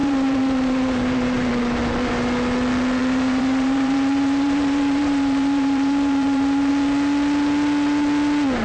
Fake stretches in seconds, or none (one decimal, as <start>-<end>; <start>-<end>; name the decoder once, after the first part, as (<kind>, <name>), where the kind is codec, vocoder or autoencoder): 0.0-1.5 (vocoder, BigVGAN v2); 3.0-6.7